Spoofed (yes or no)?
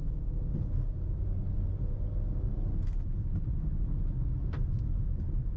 no